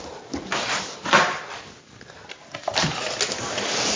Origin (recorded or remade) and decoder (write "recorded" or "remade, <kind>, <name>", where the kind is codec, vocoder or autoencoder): recorded